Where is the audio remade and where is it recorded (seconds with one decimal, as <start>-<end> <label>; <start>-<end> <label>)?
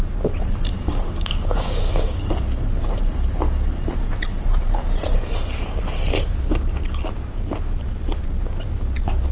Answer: 0.0-0.7 recorded; 0.7-2.3 remade; 2.3-9.3 recorded